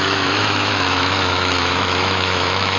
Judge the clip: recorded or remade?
remade